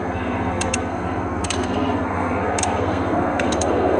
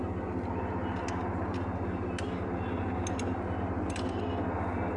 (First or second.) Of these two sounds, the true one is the second